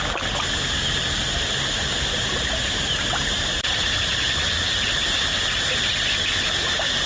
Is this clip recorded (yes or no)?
yes